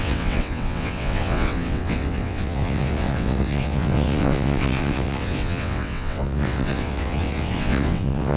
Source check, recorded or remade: remade